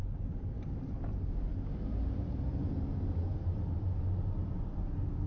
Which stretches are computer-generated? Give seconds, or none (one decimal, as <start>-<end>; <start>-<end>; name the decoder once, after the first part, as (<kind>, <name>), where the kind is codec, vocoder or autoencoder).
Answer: none